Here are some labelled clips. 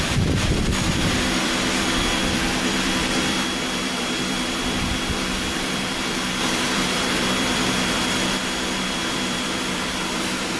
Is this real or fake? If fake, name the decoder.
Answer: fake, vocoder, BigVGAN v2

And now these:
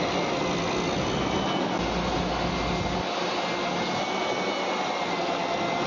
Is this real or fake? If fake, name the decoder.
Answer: real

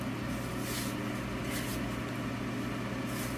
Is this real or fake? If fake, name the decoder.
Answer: real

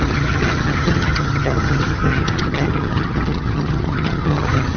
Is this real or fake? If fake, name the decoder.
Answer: fake, vocoder, HiFi-GAN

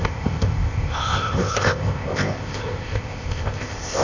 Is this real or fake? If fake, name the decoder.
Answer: fake, codec, ZipCodec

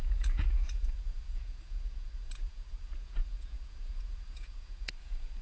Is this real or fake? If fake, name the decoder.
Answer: fake, vocoder, Vocos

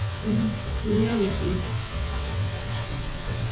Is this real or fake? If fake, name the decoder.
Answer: fake, vocoder, WaveNeXt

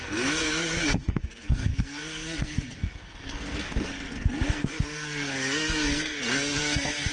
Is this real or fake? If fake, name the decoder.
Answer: fake, codec, SNAC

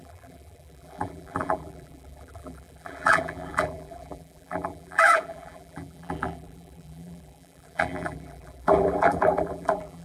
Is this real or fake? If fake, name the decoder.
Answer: fake, vocoder, BigVGAN v2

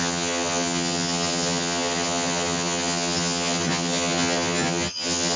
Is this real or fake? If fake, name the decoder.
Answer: fake, vocoder, HiFi-GAN